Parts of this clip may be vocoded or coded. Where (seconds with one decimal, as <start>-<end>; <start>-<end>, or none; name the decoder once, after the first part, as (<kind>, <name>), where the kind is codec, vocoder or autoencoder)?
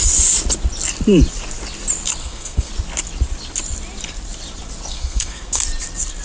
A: 2.2-2.7 (codec, SNAC); 4.9-5.6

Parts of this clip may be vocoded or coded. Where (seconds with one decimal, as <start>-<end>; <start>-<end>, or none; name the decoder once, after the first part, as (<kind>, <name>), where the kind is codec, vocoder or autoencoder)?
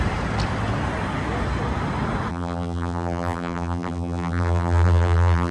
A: 2.3-5.5 (vocoder, BigVGAN v2)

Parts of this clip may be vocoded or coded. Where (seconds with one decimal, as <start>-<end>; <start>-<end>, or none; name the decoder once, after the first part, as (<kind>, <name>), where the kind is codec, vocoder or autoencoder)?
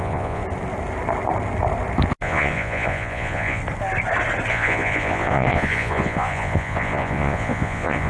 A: 0.0-0.4 (vocoder, Vocos); 2.2-3.6; 4.5-8.1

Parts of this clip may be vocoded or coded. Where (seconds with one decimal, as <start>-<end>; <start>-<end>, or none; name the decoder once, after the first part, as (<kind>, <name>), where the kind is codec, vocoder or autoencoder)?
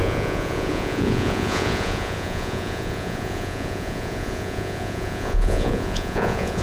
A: 0.0-6.6 (vocoder, Vocos)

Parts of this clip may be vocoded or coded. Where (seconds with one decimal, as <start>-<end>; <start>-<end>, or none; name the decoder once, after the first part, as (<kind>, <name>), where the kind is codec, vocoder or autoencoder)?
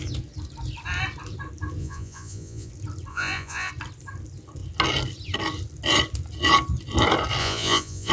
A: 1.8-2.7 (vocoder, Vocos); 3.1-3.7; 7.4-8.1